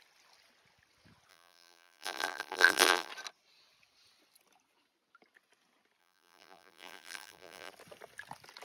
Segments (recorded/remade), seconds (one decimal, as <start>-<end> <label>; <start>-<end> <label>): 0.0-1.3 recorded; 1.3-3.1 remade; 3.1-6.0 recorded; 6.0-7.7 remade; 7.7-8.6 recorded